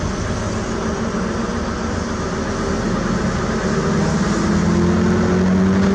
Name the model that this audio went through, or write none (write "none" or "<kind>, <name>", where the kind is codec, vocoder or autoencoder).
none